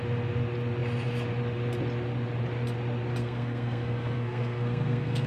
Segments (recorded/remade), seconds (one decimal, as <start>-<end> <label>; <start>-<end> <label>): 0.0-3.2 recorded; 3.2-5.3 remade